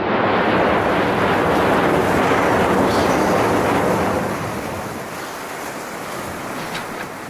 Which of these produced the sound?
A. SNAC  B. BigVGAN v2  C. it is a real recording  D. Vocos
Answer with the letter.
C